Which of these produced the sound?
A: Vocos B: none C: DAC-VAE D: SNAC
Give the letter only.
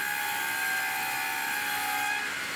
B